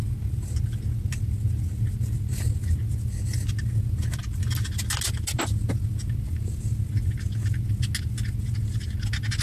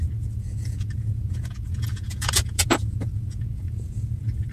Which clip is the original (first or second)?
first